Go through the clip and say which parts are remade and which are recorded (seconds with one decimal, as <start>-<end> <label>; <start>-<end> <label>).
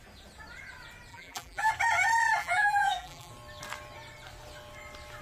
0.0-1.1 recorded; 1.1-1.7 remade; 1.7-2.4 recorded; 2.4-3.3 remade; 3.3-5.2 recorded